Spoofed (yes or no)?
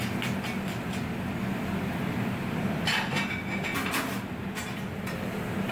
no